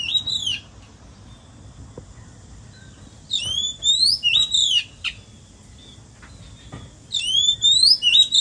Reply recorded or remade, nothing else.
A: recorded